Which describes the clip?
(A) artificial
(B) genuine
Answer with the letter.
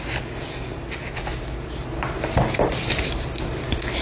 B